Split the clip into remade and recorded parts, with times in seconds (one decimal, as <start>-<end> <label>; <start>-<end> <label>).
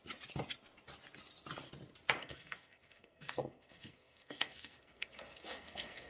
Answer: 0.0-2.2 recorded; 2.2-6.1 remade